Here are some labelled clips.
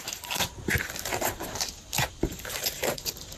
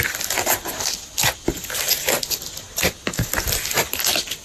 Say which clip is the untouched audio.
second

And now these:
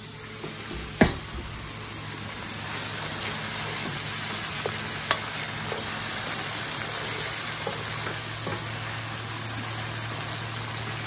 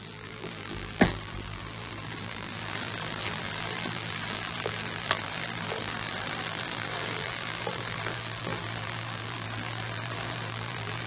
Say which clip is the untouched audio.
first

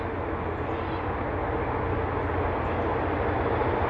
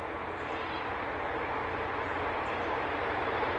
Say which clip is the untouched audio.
first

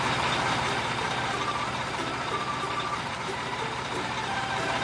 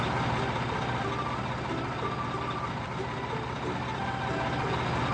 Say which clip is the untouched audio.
second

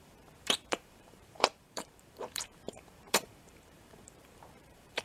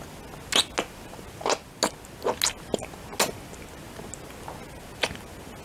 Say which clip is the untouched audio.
second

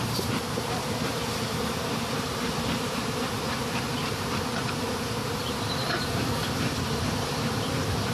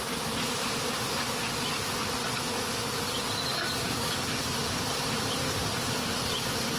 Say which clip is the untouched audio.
second